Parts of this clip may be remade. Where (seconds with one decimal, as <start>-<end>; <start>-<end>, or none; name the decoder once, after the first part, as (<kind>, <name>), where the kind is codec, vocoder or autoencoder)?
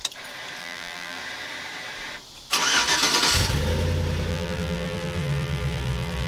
0.6-1.2 (vocoder, BigVGAN v2); 4.3-6.3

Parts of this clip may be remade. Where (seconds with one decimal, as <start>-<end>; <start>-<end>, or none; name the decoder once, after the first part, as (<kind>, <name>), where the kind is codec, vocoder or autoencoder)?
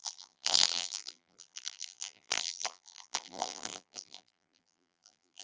0.0-5.4 (vocoder, BigVGAN v2)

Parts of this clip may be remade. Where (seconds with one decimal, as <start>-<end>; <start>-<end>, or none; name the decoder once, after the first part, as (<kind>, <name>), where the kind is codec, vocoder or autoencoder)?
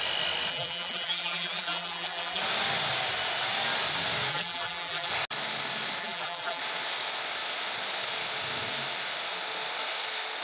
0.5-2.4 (vocoder, BigVGAN v2); 4.3-5.1; 6.0-6.6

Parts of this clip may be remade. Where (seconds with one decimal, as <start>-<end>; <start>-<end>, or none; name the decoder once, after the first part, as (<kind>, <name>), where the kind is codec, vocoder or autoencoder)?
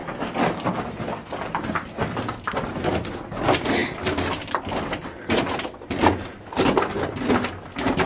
none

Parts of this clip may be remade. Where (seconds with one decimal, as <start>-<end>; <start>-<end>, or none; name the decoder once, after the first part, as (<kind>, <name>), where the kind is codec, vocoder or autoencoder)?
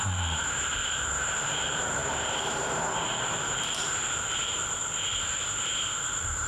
0.0-4.8 (vocoder, BigVGAN v2); 5.4-6.5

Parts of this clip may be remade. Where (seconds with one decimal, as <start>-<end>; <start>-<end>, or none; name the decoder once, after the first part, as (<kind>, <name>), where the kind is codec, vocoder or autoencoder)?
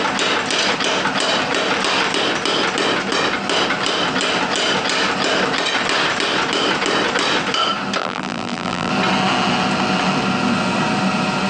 8.0-8.9 (vocoder, BigVGAN v2)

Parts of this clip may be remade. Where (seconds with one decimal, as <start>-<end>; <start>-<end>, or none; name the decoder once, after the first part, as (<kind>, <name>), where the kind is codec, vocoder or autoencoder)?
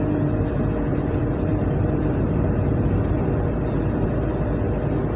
0.9-3.7 (vocoder, BigVGAN v2)